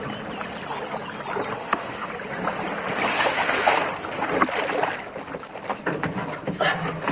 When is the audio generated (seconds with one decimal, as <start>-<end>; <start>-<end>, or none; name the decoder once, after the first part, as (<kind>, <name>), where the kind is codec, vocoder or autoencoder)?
1.6-2.1 (autoencoder, DAC-VAE); 3.1-3.8